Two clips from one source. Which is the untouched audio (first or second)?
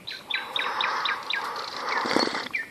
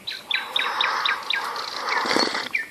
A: second